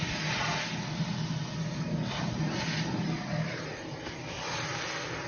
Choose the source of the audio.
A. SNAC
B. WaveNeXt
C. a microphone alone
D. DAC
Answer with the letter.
C